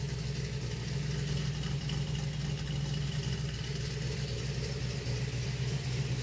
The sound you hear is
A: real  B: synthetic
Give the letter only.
A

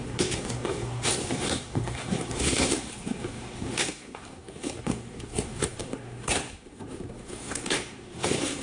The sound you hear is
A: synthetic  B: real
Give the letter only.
A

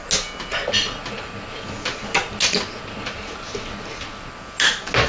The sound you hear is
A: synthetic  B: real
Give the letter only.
B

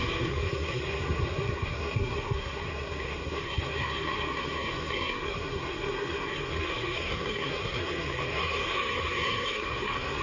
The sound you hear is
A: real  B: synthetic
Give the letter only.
B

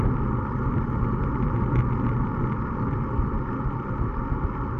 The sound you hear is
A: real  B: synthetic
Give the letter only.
A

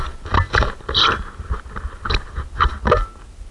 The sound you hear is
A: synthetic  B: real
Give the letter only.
B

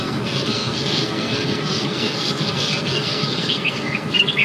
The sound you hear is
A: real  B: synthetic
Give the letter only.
B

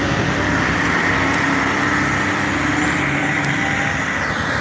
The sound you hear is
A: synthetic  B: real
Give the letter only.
B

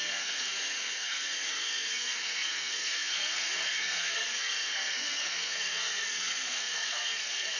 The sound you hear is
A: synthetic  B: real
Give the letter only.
A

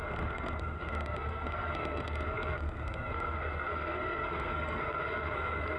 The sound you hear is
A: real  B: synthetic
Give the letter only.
B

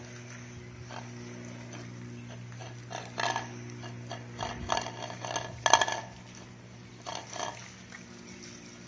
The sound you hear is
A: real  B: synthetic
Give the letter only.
A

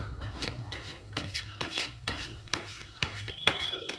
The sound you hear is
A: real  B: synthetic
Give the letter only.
B